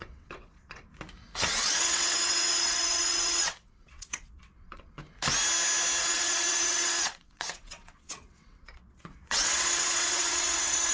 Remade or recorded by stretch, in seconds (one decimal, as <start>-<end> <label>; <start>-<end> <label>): 0.0-0.8 remade; 0.8-1.5 recorded; 1.5-5.0 remade; 5.0-6.0 recorded; 6.0-10.9 remade